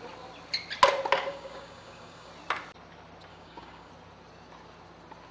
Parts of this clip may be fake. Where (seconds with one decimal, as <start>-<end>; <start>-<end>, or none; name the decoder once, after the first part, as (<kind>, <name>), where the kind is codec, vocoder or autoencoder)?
1.3-2.3 (codec, DAC); 3.3-3.9